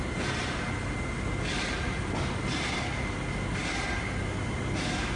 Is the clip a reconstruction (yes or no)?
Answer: no